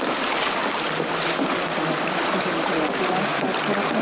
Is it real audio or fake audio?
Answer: real